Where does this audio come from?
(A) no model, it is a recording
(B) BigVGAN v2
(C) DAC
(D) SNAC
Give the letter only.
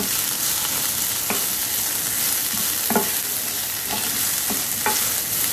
A